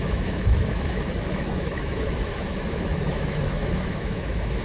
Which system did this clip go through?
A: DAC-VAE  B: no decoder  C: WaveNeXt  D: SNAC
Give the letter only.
A